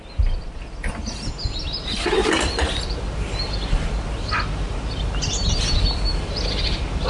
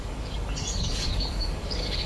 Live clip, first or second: first